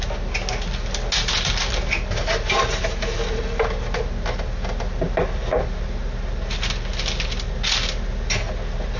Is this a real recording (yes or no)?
yes